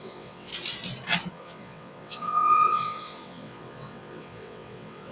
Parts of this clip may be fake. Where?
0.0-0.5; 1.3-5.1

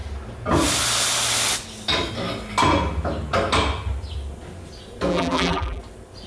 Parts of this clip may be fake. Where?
5.1-5.8